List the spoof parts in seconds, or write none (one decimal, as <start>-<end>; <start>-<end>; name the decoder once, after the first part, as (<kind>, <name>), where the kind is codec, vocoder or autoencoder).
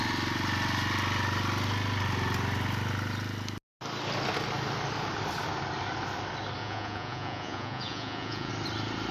6.6-8.5 (vocoder, Vocos)